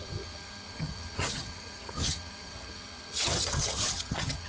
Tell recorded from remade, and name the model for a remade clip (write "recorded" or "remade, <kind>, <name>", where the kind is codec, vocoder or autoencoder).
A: remade, vocoder, HiFi-GAN